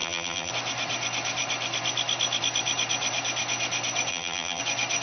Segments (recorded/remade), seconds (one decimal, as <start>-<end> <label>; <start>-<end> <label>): 0.0-0.5 remade; 0.5-4.1 recorded; 4.1-4.6 remade; 4.6-5.0 recorded

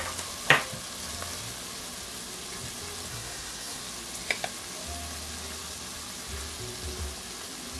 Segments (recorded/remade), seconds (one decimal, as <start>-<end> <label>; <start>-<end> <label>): 0.0-3.1 recorded; 3.1-3.8 remade; 3.8-7.8 recorded

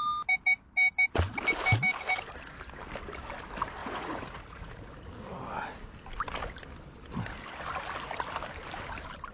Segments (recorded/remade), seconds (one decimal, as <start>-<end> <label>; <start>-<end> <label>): 0.0-3.8 recorded; 3.8-5.1 remade; 5.1-9.3 recorded

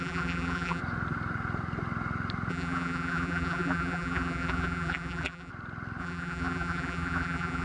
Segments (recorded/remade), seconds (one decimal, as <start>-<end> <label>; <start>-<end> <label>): 0.0-0.8 remade; 0.8-2.5 recorded; 2.5-5.5 remade; 5.5-6.0 recorded; 6.0-7.6 remade

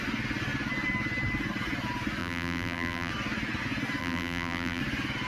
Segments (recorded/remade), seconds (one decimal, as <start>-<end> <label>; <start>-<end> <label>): 0.0-2.2 recorded; 2.2-3.1 remade; 3.1-4.0 recorded; 4.0-4.8 remade; 4.8-5.3 recorded

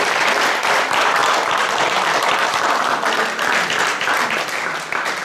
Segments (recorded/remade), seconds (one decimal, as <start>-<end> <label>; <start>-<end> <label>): 0.0-1.2 recorded; 1.2-2.7 remade; 2.7-3.5 recorded; 3.5-5.2 remade